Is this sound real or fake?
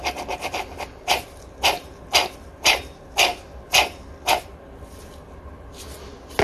real